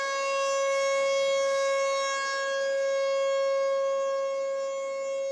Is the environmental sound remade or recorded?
recorded